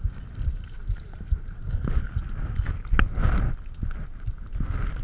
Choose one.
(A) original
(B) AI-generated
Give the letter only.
A